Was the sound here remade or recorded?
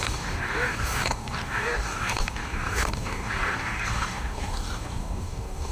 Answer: remade